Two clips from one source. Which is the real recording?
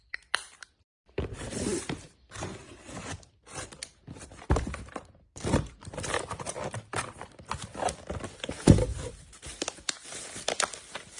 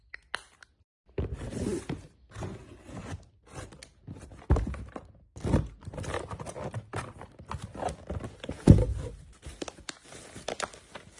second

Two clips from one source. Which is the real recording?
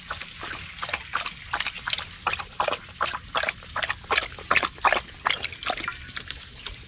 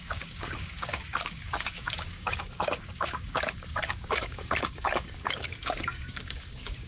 first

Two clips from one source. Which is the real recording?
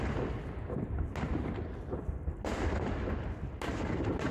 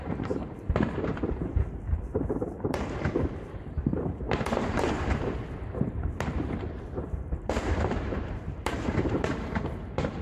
first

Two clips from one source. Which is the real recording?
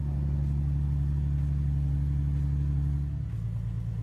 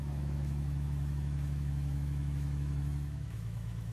first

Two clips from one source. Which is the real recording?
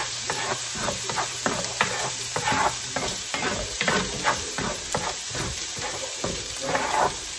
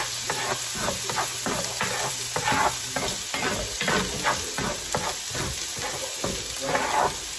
second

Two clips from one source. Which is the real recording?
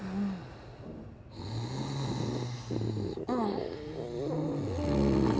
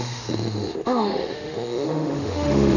first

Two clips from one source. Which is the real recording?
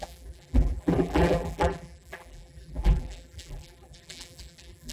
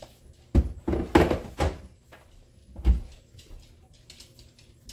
second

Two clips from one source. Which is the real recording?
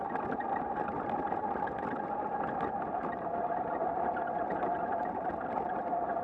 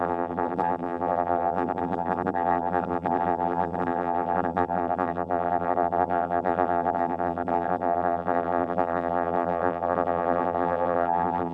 first